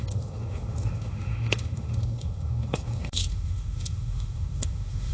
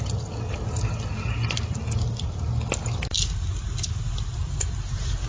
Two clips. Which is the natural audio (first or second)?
second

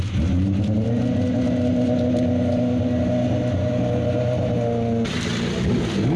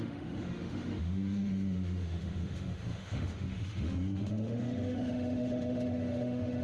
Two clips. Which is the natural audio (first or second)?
first